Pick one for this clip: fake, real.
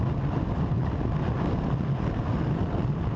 real